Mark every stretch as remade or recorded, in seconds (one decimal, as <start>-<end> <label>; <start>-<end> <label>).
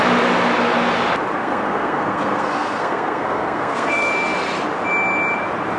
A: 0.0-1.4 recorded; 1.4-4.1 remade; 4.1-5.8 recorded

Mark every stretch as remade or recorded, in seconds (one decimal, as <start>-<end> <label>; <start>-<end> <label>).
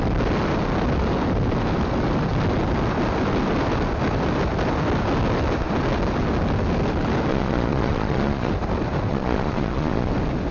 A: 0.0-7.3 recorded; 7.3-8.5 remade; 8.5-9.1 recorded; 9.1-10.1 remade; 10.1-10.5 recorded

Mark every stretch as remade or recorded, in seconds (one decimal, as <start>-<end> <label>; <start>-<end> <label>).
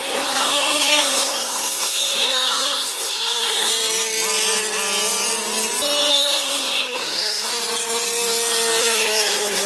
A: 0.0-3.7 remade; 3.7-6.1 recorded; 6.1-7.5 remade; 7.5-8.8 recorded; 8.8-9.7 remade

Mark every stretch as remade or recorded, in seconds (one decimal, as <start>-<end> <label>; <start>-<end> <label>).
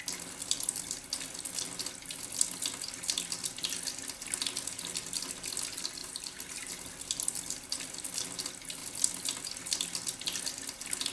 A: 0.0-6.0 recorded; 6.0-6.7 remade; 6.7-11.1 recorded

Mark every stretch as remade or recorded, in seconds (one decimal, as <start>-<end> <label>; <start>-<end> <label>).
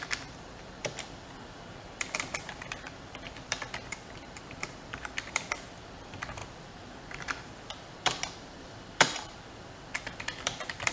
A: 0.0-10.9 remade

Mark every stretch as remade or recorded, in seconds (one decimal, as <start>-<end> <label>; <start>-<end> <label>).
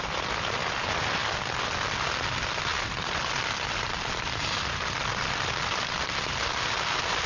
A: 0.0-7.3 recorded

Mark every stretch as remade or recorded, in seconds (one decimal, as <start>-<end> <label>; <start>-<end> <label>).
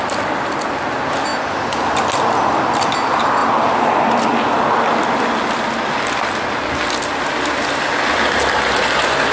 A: 0.0-9.3 recorded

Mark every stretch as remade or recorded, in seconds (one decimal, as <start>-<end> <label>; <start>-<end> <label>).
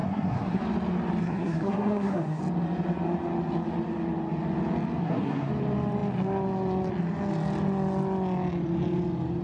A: 0.0-0.6 remade; 0.6-1.2 recorded; 1.2-2.4 remade; 2.4-5.0 recorded; 5.0-5.5 remade; 5.5-9.4 recorded